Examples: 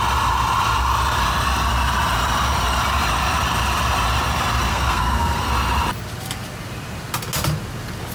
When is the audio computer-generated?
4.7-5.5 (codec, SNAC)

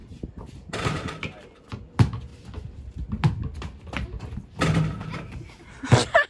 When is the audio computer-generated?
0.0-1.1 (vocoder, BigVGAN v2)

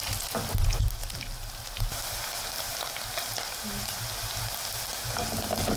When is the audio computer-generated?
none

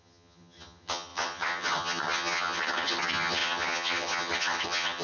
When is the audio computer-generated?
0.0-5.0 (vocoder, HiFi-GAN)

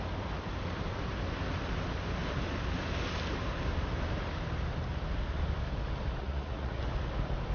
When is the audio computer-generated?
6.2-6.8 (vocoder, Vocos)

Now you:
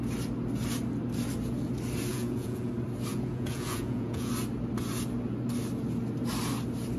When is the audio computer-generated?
2.1-2.7 (vocoder, Vocos); 3.1-4.3

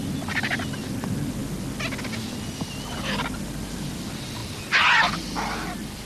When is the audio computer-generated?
none

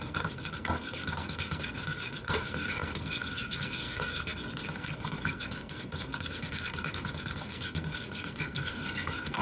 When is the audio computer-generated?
0.0-9.4 (codec, SNAC)